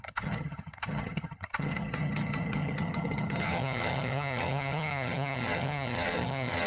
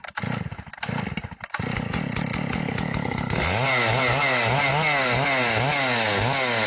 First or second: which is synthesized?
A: first